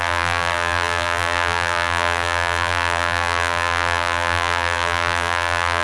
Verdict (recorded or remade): remade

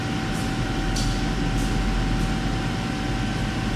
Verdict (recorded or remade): recorded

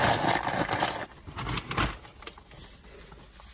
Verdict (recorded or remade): recorded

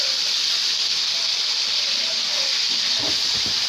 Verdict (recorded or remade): recorded